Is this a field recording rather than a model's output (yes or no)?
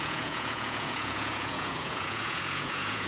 no